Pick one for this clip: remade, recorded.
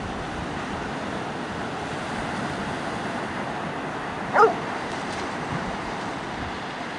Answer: recorded